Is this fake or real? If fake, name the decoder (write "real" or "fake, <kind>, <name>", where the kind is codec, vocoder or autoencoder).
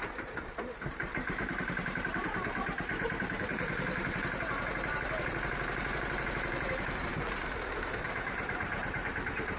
fake, vocoder, BigVGAN v2